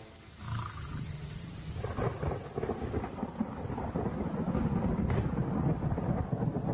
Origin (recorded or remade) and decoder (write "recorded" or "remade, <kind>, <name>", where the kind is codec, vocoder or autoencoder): recorded